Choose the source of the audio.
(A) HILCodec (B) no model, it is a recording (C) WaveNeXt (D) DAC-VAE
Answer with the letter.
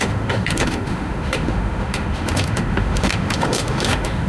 D